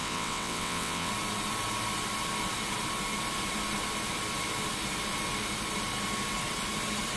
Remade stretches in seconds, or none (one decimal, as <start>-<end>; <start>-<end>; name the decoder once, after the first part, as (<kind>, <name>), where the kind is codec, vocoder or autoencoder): 0.0-1.1 (vocoder, WaveNeXt)